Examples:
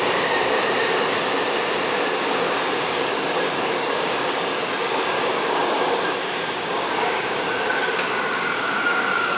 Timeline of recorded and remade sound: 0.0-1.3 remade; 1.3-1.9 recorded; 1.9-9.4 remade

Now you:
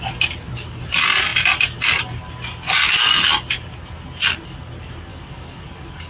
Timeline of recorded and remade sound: 0.0-5.1 recorded; 5.1-6.1 remade